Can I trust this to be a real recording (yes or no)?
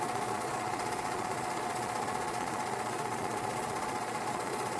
no